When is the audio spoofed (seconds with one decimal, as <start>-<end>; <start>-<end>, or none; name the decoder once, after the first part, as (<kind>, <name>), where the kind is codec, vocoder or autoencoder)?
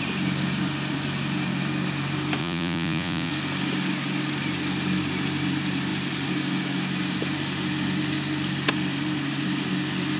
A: 2.4-3.3 (vocoder, Vocos)